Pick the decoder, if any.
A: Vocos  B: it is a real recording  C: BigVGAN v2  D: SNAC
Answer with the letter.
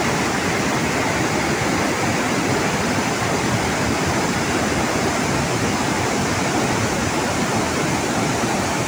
B